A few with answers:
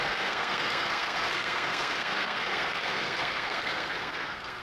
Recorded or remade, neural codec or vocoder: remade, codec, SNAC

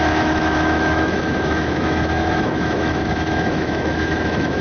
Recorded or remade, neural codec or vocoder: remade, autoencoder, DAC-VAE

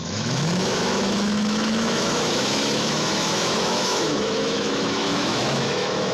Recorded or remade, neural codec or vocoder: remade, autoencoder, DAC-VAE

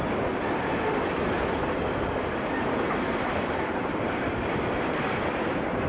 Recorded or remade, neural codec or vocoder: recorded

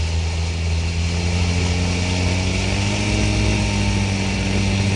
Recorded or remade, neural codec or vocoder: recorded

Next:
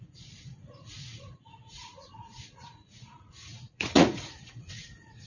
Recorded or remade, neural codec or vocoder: remade, vocoder, Vocos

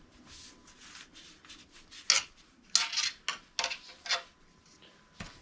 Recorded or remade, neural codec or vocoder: recorded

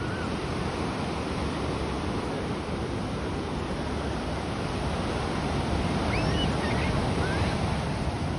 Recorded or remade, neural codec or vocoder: recorded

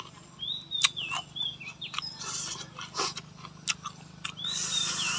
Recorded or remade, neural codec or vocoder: recorded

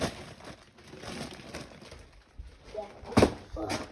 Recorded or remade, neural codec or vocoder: recorded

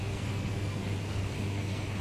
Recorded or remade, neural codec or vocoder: remade, codec, SNAC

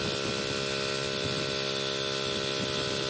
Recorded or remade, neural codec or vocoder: recorded